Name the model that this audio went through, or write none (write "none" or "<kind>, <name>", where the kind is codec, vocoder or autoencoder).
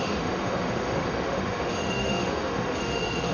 autoencoder, DAC-VAE